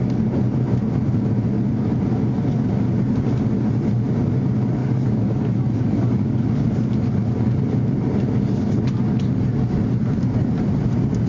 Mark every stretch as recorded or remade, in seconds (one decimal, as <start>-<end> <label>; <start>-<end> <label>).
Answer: 0.0-4.8 recorded; 4.8-6.4 remade; 6.4-11.3 recorded